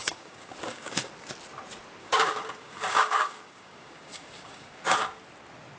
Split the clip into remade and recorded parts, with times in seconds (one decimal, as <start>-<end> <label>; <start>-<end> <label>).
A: 0.0-1.1 remade; 1.1-2.0 recorded; 2.0-5.2 remade; 5.2-5.8 recorded